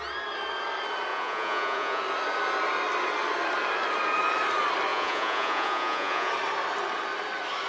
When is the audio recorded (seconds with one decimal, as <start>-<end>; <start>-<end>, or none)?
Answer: 0.0-1.1; 2.0-4.9; 6.3-7.7